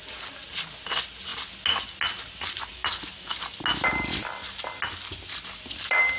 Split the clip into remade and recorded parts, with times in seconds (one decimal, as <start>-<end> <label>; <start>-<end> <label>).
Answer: 0.0-6.2 recorded